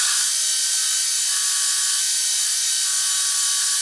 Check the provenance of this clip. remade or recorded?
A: recorded